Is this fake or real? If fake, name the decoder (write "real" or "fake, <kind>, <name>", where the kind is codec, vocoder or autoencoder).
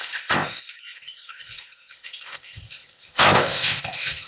fake, codec, ZipCodec